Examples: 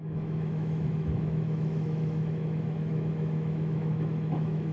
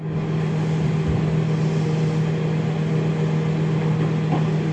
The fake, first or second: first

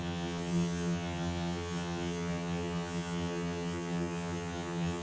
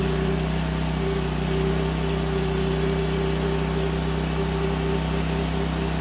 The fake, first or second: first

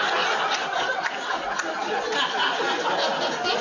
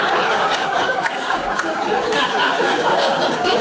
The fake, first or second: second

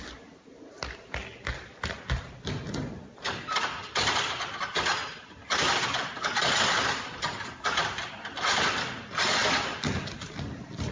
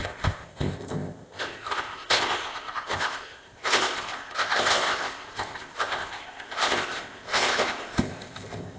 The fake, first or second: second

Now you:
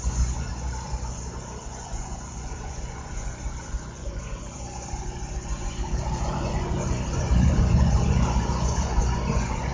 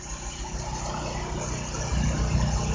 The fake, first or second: first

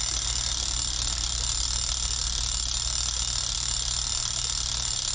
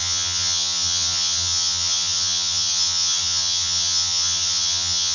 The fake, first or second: second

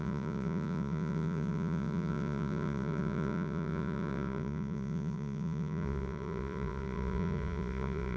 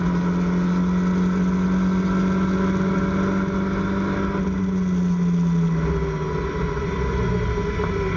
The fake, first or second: first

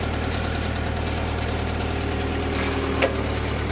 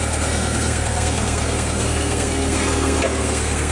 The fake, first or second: second